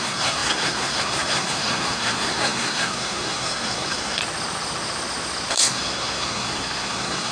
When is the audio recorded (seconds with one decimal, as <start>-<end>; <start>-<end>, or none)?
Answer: 4.2-5.5